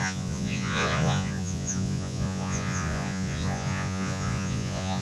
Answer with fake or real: fake